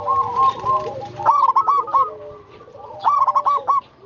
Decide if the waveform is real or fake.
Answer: real